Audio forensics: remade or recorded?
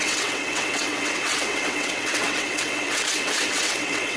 remade